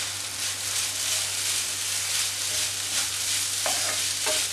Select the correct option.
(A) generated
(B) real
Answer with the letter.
B